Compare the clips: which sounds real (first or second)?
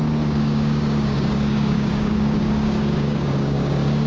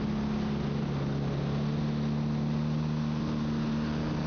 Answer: second